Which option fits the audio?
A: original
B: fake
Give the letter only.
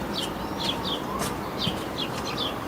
A